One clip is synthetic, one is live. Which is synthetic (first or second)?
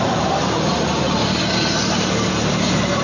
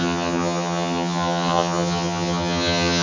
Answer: second